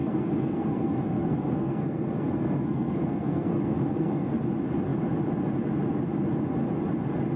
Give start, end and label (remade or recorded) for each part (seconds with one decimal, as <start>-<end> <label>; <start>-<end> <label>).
0.0-4.4 remade; 4.4-7.4 recorded